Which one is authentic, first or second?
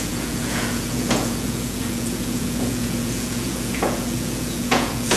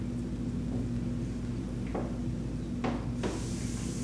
second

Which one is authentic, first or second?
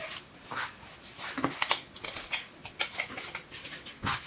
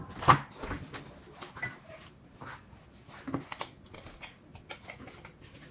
second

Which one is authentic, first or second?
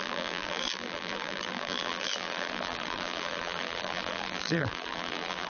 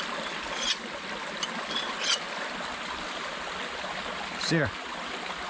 second